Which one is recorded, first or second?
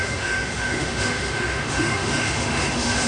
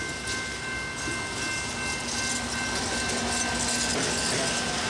second